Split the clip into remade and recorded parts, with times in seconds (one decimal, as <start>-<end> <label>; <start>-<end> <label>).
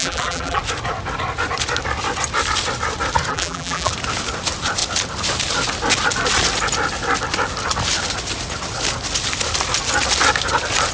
0.0-0.6 remade; 0.6-3.3 recorded; 3.3-3.9 remade; 3.9-10.9 recorded